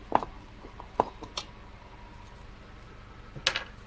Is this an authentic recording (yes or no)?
yes